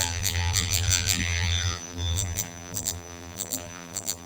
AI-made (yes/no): yes